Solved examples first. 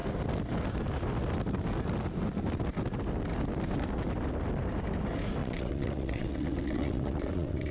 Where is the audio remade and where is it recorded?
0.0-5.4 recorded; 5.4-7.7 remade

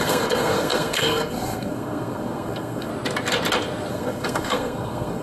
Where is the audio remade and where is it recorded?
0.0-2.9 remade; 2.9-3.9 recorded; 3.9-5.2 remade

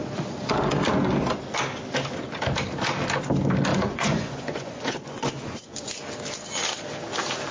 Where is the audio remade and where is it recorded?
0.0-3.7 recorded; 3.7-6.0 remade; 6.0-7.5 recorded

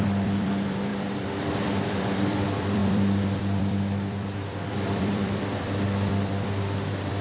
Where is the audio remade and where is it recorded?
0.0-7.2 remade

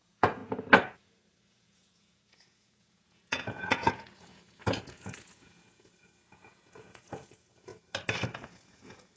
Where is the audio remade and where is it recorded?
0.0-0.4 remade; 0.4-1.0 recorded; 1.0-7.7 remade; 7.7-8.3 recorded; 8.3-9.2 remade

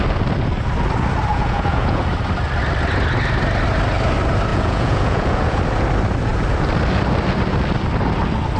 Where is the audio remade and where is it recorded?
0.0-1.3 recorded; 1.3-2.0 remade; 2.0-4.5 recorded; 4.5-5.6 remade; 5.6-8.6 recorded

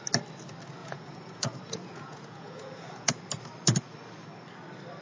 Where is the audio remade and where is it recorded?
0.0-0.8 recorded; 0.8-3.2 remade; 3.2-5.0 recorded